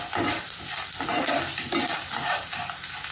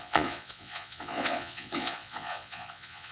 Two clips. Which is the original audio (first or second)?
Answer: first